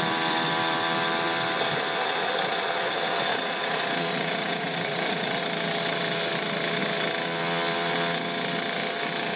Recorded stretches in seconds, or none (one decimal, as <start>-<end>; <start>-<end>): 0.0-3.3; 5.4-9.4